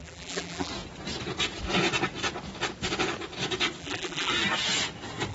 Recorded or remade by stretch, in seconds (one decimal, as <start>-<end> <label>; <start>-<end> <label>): 0.0-0.7 remade; 0.7-3.8 recorded; 3.8-4.3 remade; 4.3-5.3 recorded